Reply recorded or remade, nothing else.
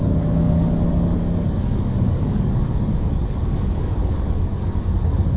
remade